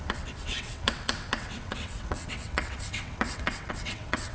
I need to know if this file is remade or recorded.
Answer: remade